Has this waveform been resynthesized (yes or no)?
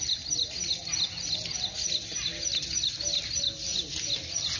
no